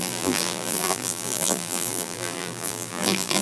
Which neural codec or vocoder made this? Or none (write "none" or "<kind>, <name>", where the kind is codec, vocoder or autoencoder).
vocoder, BigVGAN v2